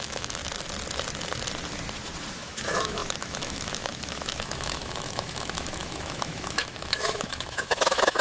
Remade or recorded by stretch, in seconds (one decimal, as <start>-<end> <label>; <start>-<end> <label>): 0.0-0.4 remade; 0.4-2.3 recorded; 2.3-8.2 remade